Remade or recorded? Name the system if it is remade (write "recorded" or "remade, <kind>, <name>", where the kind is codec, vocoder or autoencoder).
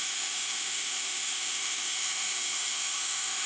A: remade, autoencoder, DAC-VAE